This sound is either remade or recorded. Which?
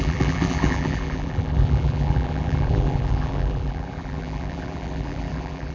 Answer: remade